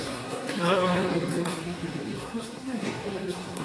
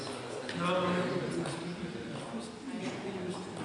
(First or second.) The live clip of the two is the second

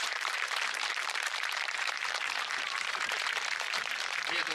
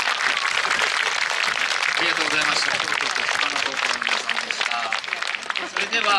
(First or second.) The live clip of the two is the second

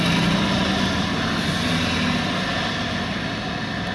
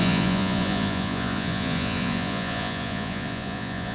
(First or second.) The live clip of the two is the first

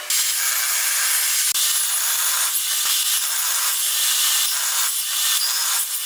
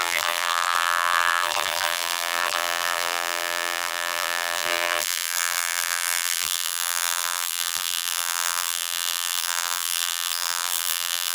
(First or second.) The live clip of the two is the first